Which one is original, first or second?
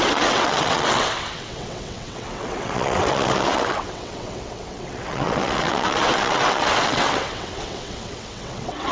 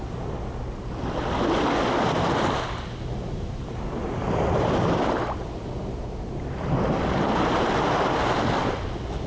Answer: second